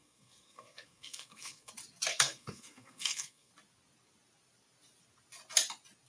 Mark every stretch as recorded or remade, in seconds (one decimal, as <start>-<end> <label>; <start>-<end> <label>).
0.0-1.7 remade; 1.7-2.1 recorded; 2.1-3.5 remade; 3.5-6.1 recorded